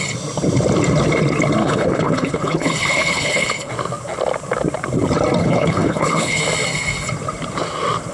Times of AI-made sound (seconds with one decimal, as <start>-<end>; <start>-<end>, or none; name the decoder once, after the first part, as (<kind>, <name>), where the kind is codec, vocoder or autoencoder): 1.6-3.7 (codec, HILCodec); 5.4-6.4